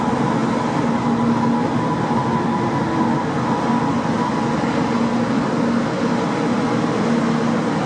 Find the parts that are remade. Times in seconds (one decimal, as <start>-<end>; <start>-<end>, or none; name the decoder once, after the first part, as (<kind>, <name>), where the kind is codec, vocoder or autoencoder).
none